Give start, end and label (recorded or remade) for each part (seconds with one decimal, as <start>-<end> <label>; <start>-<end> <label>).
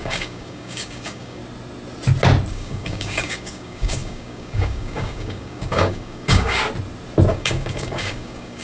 0.0-1.4 remade; 1.4-2.5 recorded; 2.5-6.6 remade; 6.6-7.3 recorded; 7.3-8.6 remade